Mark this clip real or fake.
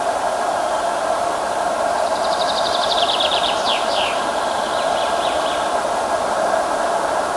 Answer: fake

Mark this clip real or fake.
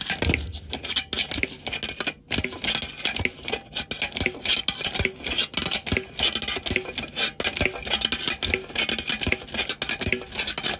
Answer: real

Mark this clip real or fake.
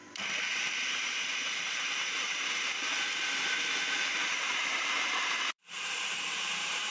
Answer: fake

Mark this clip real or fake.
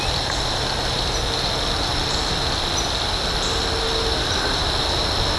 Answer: real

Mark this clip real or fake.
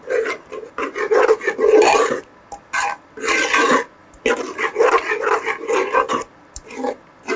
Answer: real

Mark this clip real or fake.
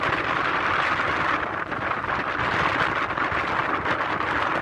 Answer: real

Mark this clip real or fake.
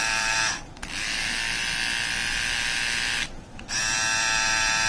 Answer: fake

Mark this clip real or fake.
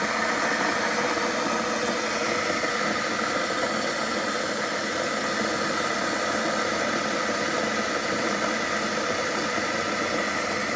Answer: real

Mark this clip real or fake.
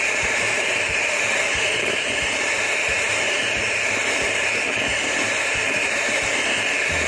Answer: fake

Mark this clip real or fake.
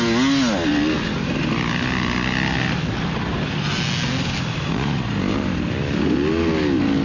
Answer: real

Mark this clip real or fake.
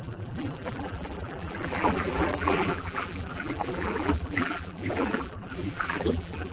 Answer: fake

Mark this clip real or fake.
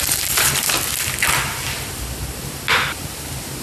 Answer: real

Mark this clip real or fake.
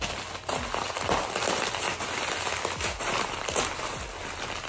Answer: real